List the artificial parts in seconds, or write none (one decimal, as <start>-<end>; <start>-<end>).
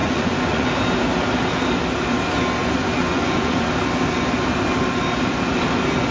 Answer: 0.0-0.7; 2.6-3.7